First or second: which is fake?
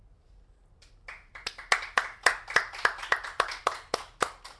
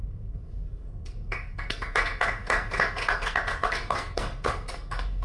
second